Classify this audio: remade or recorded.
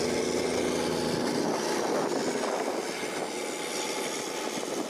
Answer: recorded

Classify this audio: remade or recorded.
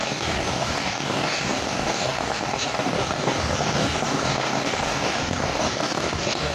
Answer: remade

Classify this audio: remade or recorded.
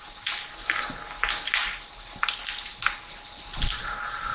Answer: recorded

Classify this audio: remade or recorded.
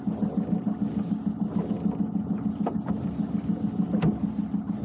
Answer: recorded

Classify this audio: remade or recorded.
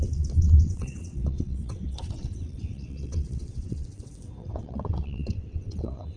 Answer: remade